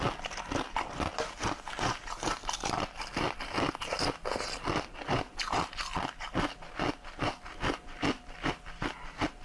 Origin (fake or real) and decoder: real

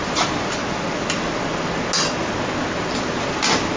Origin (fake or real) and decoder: real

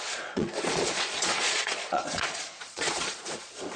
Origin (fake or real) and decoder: fake, vocoder, Vocos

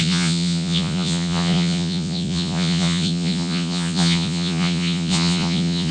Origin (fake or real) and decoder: fake, vocoder, Vocos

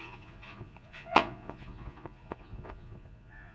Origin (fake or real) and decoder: fake, vocoder, Vocos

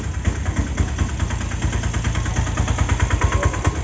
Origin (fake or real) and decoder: real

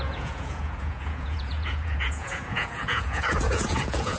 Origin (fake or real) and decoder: fake, vocoder, Vocos